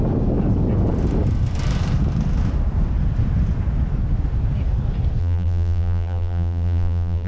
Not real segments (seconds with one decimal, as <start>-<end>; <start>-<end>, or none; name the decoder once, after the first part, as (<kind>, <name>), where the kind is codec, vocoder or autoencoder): 5.2-7.3 (vocoder, BigVGAN v2)